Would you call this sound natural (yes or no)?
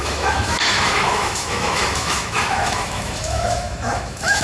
no